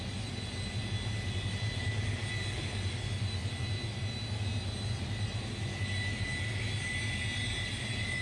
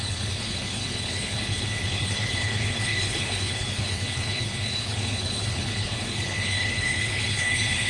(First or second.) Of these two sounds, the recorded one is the first